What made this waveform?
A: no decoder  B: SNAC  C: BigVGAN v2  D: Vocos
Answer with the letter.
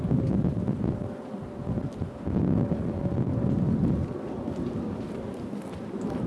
A